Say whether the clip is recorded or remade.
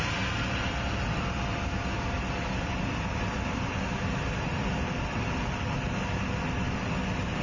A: recorded